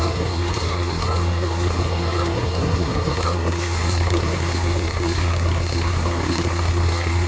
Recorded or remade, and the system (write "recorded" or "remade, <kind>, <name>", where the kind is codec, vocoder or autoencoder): remade, codec, SNAC